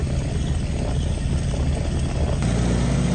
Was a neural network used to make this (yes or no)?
no